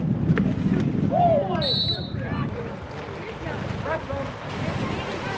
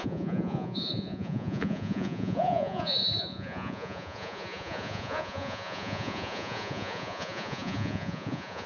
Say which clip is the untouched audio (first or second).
first